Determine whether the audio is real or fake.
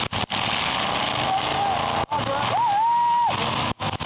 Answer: real